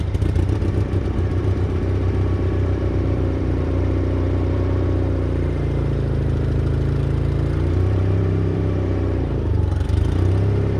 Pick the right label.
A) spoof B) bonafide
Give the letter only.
A